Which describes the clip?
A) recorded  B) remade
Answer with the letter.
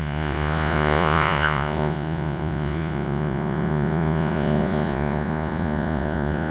B